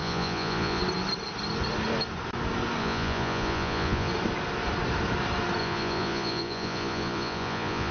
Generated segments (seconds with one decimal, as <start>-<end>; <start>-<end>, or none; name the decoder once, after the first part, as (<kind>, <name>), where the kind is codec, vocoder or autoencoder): 0.0-0.8 (vocoder, Vocos); 2.8-4.1; 5.6-7.9